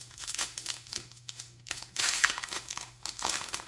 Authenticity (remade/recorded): remade